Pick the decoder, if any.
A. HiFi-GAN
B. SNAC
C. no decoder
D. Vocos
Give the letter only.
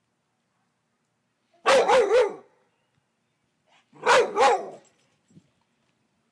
C